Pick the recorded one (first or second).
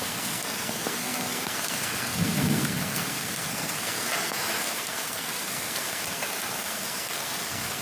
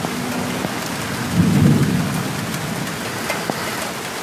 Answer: second